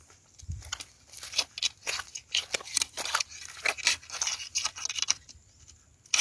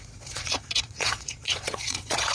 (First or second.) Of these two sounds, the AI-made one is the second